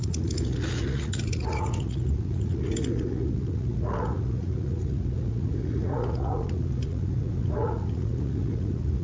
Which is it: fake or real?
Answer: fake